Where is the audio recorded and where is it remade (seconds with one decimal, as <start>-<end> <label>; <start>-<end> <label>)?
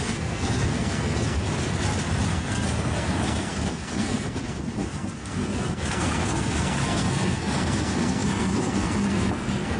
0.0-1.5 remade; 1.5-2.3 recorded; 2.3-9.8 remade